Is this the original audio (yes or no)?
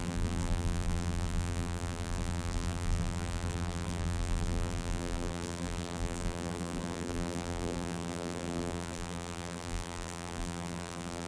no